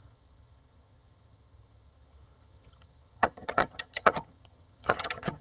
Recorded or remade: remade